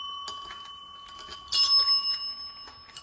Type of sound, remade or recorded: recorded